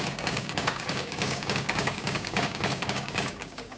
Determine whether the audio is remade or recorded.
remade